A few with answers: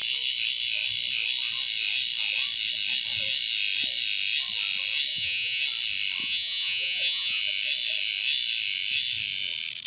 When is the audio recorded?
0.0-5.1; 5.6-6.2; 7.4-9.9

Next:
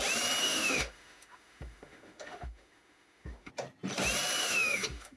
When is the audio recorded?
0.0-0.4; 3.5-4.4

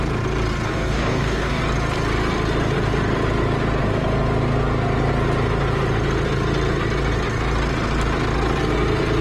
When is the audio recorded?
0.0-0.7; 1.6-9.2

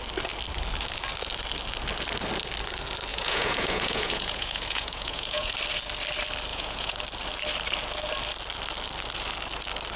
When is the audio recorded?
0.0-3.1; 5.5-6.5; 7.0-10.0

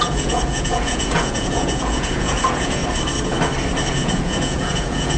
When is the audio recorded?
2.8-3.9

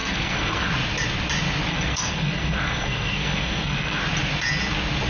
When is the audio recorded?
0.7-1.7; 4.0-5.1